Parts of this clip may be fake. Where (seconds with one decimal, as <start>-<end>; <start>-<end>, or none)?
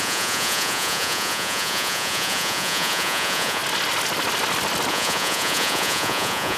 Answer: 0.0-3.6; 4.9-6.6